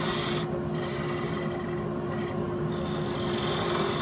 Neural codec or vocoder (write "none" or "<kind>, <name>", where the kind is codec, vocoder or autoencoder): none